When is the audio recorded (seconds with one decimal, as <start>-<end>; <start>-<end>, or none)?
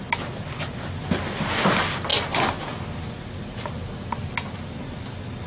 0.0-5.5